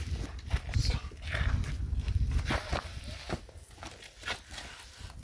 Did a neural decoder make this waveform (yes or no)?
no